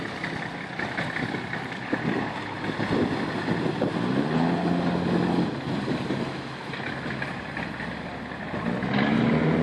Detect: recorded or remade recorded